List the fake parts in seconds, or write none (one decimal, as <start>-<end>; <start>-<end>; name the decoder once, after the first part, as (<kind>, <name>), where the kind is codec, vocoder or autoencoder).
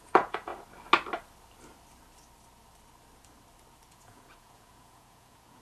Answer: 0.0-0.5 (vocoder, Vocos); 3.9-5.6